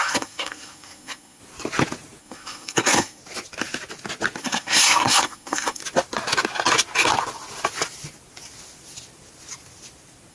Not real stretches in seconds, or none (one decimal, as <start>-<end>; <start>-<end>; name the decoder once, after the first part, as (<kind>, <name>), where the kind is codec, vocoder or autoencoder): 0.0-1.4 (codec, SNAC); 2.2-3.2; 4.4-5.8